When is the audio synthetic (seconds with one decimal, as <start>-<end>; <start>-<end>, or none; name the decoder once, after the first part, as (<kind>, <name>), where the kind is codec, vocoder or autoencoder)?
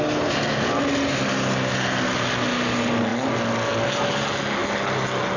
none